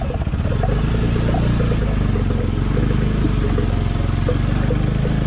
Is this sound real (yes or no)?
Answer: yes